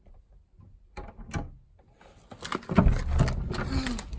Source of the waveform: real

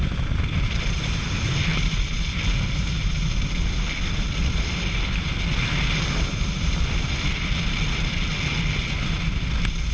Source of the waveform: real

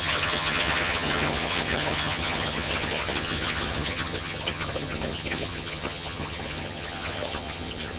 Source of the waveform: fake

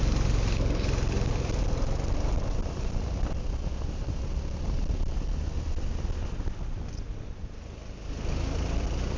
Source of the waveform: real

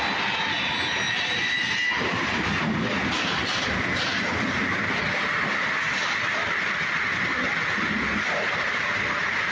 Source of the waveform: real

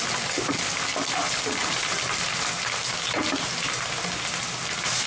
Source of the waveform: real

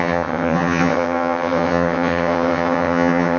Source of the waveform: fake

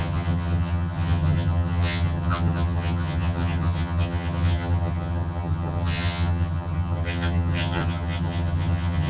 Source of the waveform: fake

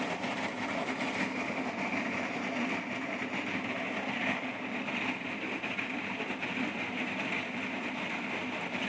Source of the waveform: real